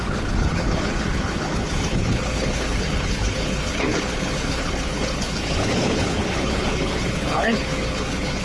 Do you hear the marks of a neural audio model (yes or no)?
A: yes